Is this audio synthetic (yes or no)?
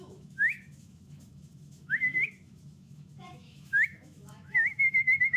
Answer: yes